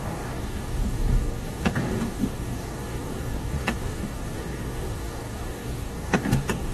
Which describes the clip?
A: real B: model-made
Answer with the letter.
B